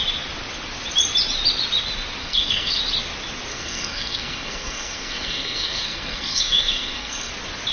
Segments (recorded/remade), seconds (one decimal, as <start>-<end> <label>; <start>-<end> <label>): 0.0-2.2 recorded; 2.2-2.8 remade; 2.8-3.5 recorded; 3.5-7.3 remade; 7.3-7.7 recorded